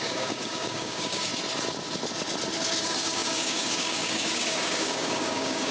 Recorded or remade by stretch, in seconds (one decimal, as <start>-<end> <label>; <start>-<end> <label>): 0.0-1.3 remade; 1.3-2.8 recorded; 2.8-5.7 remade